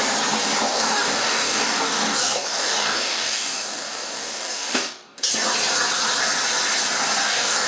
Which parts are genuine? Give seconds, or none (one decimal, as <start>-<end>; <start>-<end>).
0.0-0.7; 5.3-7.2